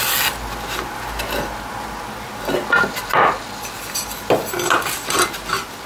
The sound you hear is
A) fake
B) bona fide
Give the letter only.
B